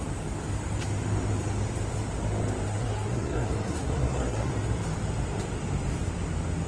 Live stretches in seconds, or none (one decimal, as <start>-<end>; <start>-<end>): 0.0-2.7; 4.5-6.7